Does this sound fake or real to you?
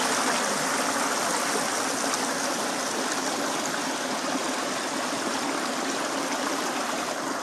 real